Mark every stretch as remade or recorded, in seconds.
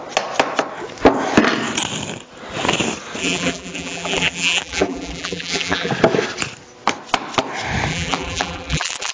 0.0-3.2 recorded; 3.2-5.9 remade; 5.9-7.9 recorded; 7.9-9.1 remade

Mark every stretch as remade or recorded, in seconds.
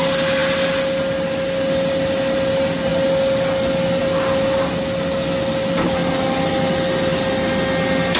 0.0-8.2 recorded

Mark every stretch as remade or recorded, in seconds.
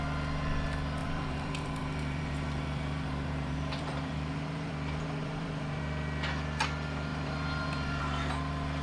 0.0-1.0 recorded; 1.0-4.7 remade; 4.7-5.2 recorded; 5.2-5.8 remade; 5.8-7.1 recorded; 7.1-8.0 remade; 8.0-8.8 recorded